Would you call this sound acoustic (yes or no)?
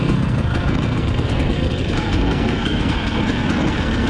no